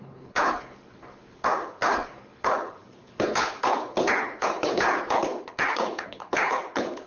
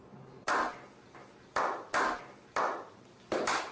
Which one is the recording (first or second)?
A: second